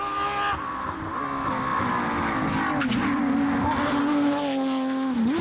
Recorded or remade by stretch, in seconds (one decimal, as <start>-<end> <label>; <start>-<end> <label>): 0.0-5.4 recorded